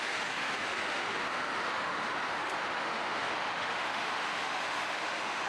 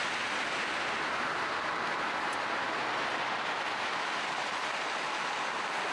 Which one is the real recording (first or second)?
second